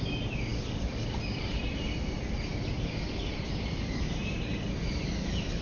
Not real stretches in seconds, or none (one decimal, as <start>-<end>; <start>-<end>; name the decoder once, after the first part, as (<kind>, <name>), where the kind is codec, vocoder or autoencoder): 0.0-0.5 (vocoder, BigVGAN v2); 1.2-4.2; 5.0-5.6